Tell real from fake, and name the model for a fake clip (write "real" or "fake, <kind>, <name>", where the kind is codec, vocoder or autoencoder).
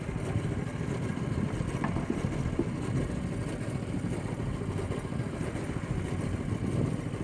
real